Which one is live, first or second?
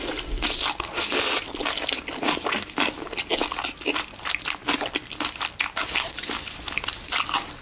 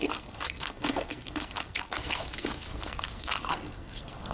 first